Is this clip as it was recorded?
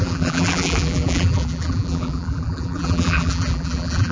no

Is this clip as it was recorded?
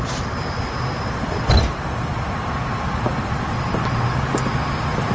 yes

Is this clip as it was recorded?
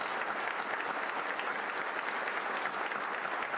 yes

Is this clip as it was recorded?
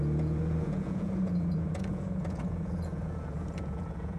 no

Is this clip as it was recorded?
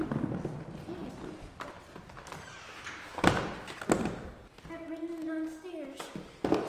yes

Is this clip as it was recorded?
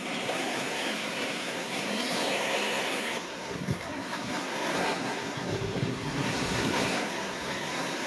no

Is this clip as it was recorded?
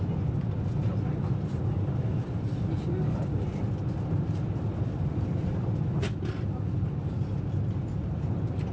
yes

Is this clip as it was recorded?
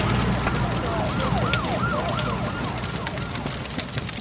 yes